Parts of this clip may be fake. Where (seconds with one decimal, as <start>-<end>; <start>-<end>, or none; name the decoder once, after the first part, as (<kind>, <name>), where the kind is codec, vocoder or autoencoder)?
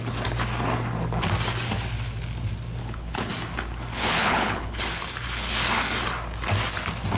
2.8-3.3 (codec, HILCodec); 3.9-4.8